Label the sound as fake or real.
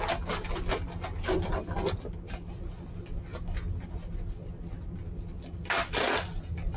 real